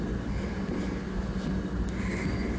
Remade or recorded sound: recorded